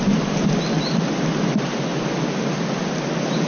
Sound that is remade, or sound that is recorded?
recorded